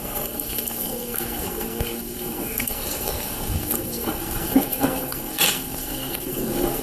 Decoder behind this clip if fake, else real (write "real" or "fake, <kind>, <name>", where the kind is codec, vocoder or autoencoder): fake, codec, SNAC